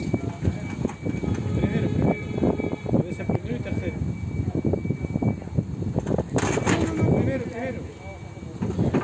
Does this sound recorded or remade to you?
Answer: recorded